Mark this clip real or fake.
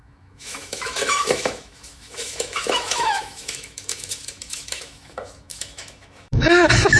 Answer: fake